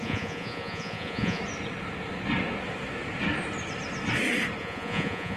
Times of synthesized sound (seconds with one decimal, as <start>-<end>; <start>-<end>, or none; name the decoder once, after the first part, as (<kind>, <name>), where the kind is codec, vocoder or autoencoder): 0.0-1.4 (vocoder, Vocos); 4.6-5.4